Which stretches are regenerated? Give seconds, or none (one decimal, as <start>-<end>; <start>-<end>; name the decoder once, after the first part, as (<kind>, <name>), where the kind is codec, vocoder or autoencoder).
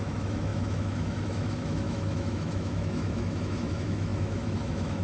0.0-5.0 (autoencoder, DAC-VAE)